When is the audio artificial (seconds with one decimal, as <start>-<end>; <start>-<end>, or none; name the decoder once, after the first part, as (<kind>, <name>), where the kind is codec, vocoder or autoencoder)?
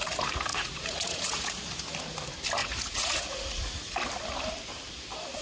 0.5-1.5 (vocoder, Vocos); 2.6-3.9